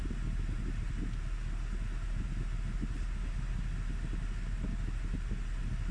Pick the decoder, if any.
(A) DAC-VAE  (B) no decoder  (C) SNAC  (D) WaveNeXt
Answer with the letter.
B